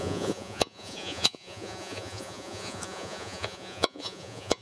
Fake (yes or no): yes